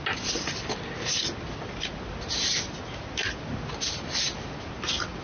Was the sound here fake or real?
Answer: real